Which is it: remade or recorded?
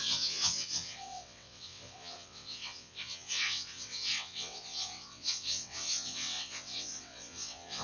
remade